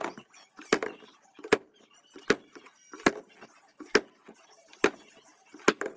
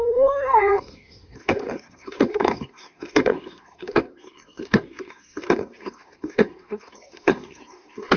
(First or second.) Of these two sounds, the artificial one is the second